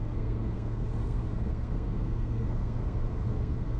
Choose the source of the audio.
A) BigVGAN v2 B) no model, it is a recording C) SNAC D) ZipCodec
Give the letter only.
C